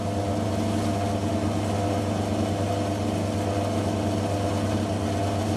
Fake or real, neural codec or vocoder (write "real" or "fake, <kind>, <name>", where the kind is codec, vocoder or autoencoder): real